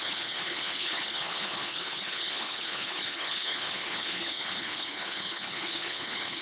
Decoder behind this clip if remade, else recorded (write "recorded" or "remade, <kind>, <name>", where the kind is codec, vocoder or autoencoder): remade, codec, HILCodec